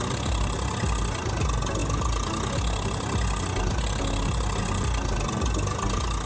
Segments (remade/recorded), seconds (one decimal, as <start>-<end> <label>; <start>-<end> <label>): 0.0-6.3 recorded